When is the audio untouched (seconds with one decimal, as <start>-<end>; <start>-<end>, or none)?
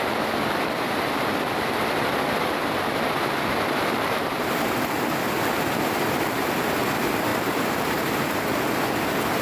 0.0-3.9; 6.5-7.3; 8.1-9.4